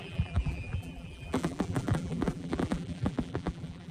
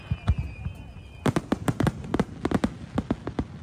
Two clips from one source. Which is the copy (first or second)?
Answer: first